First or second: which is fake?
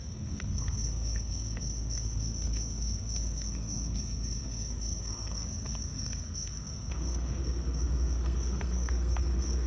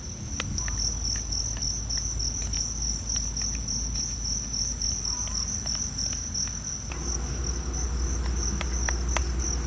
first